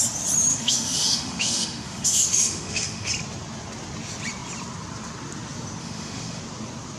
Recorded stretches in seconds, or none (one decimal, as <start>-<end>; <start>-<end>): 0.0-0.5; 3.1-5.8; 6.4-7.0